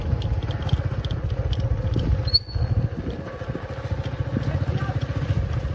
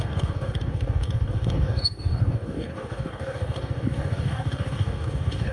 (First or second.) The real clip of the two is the first